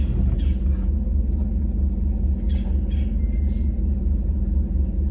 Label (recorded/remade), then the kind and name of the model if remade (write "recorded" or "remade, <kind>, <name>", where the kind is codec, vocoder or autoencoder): recorded